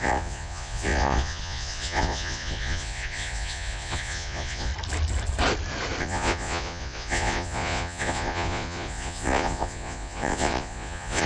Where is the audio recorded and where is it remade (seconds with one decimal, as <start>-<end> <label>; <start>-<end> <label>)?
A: 0.0-4.7 remade; 4.7-6.0 recorded; 6.0-11.3 remade